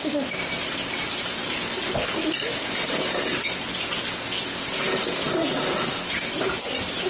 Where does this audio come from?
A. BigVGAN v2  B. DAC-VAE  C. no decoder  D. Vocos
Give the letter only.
C